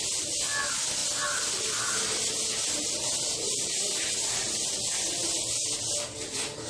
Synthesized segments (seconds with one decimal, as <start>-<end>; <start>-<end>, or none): none